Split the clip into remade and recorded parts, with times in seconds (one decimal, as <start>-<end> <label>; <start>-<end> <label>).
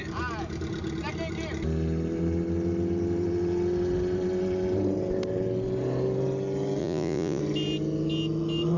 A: 0.0-6.8 recorded; 6.8-7.4 remade; 7.4-8.8 recorded